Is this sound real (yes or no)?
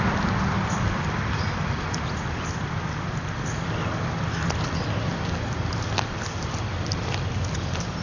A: yes